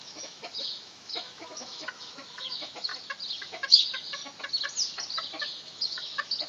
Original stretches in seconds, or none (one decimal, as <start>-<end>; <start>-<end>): 2.9-3.4; 4.2-5.4